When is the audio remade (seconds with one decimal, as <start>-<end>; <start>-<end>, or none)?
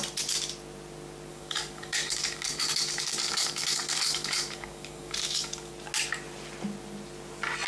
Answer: 1.3-5.7